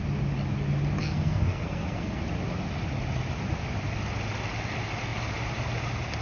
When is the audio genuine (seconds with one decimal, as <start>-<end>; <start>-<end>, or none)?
0.0-1.0; 2.2-6.2